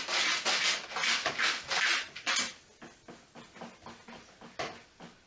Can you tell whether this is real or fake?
real